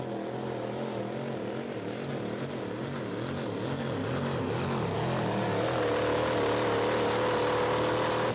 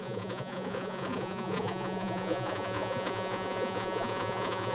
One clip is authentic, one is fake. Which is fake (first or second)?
second